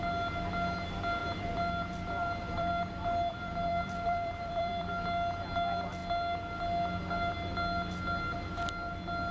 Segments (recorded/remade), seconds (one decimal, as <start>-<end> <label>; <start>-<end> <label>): 0.0-1.2 recorded; 1.2-2.9 remade; 2.9-3.3 recorded; 3.3-4.9 remade; 4.9-9.3 recorded